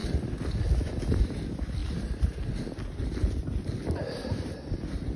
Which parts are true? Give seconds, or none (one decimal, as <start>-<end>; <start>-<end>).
0.0-5.2